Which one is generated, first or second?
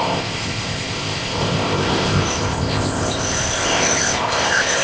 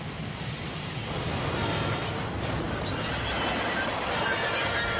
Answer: first